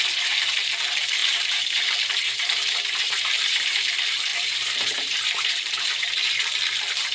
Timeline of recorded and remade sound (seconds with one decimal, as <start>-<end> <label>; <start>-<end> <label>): 0.0-7.1 remade